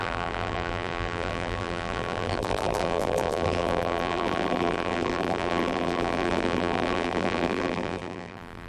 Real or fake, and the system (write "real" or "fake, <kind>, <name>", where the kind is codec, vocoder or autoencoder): fake, vocoder, BigVGAN v2